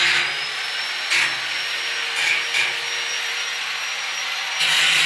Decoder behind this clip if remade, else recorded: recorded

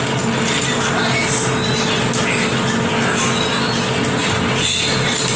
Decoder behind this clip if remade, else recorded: recorded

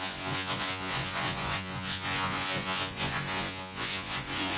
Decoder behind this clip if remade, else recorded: remade, vocoder, Vocos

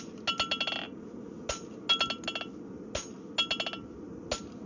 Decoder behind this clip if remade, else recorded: recorded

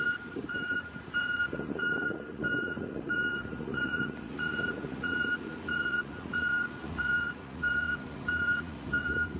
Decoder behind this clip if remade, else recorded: remade, vocoder, Vocos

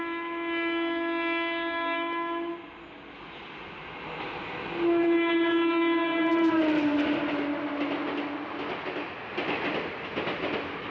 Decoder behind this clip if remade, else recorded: recorded